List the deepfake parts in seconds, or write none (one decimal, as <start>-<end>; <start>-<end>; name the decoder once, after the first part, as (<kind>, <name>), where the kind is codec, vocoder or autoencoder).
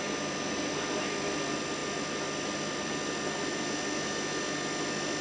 none